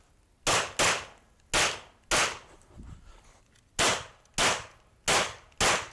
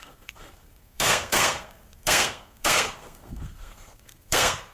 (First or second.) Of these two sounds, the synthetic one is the second